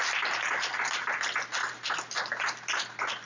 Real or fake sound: real